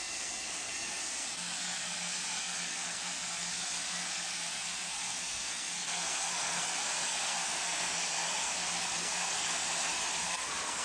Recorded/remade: remade